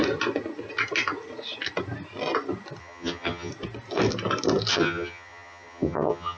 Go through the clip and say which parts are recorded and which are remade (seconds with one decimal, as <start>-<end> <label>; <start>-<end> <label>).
0.0-2.8 recorded; 2.8-3.5 remade; 3.5-4.7 recorded; 4.7-6.4 remade